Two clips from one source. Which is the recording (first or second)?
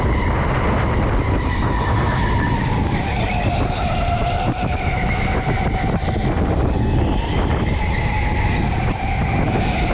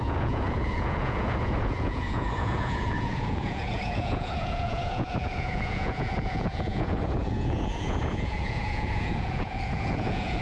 first